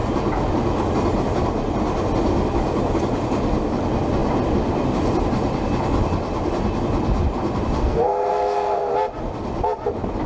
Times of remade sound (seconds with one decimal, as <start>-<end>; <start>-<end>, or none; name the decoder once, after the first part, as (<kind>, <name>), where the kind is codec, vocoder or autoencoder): 7.8-8.9 (codec, SNAC)